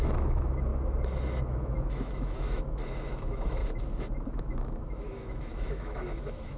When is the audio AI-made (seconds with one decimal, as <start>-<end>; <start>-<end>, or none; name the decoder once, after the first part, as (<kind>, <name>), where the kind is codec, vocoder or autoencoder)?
0.0-0.7 (autoencoder, DAC-VAE); 1.4-3.6; 4.4-6.6